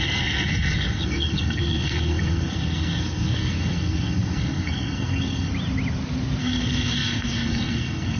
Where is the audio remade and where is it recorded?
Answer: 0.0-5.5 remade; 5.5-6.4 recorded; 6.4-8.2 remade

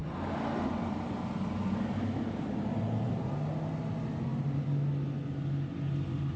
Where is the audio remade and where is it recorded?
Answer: 0.0-6.4 recorded

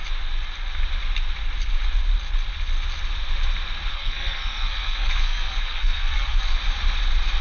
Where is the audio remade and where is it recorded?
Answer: 0.0-3.9 recorded; 3.9-6.6 remade; 6.6-7.4 recorded

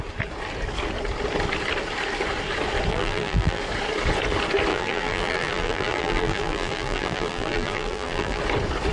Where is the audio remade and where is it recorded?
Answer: 0.0-2.9 recorded; 2.9-3.6 remade; 3.6-4.7 recorded; 4.7-8.4 remade; 8.4-8.9 recorded

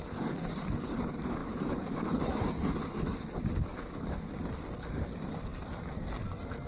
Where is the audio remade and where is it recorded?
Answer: 0.0-1.4 recorded; 1.4-2.1 remade; 2.1-3.7 recorded; 3.7-4.3 remade; 4.3-6.7 recorded

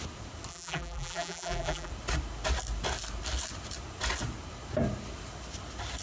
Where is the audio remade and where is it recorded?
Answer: 0.0-0.5 recorded; 0.5-1.9 remade; 1.9-6.0 recorded